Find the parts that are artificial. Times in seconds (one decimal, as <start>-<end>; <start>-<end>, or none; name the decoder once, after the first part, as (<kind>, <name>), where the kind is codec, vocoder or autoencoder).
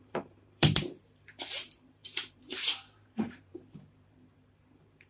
0.0-5.1 (vocoder, BigVGAN v2)